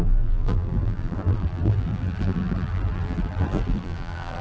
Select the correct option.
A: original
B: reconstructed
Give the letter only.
B